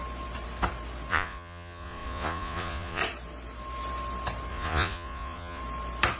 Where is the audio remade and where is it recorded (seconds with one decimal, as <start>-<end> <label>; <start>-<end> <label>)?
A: 0.0-1.1 recorded; 1.1-3.0 remade; 3.0-4.5 recorded; 4.5-5.6 remade; 5.6-6.2 recorded